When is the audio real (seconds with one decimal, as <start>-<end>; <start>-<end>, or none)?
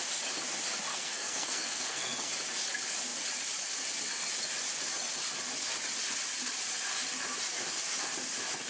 0.0-0.9; 2.3-8.7